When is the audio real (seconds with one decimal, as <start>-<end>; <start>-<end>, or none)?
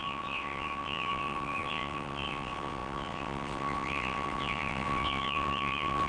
none